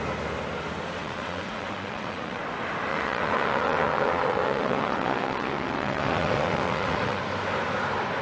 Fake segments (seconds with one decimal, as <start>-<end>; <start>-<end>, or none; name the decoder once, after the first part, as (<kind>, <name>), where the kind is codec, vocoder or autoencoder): 1.0-2.4 (vocoder, WaveNeXt); 2.9-7.2

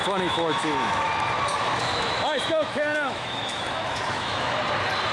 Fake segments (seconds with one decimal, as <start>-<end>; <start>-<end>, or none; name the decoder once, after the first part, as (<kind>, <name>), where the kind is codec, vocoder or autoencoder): 0.0-1.1 (autoencoder, DAC-VAE); 1.5-4.6